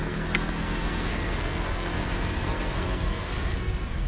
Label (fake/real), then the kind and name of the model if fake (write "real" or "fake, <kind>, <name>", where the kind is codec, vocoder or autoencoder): fake, codec, SNAC